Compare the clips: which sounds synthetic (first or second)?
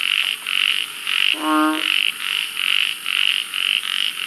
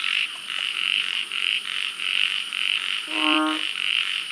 second